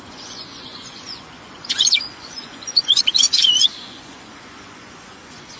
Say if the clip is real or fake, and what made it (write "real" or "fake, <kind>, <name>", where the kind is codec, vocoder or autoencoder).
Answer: fake, vocoder, Vocos